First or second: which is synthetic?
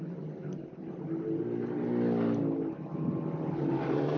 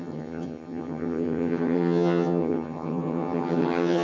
second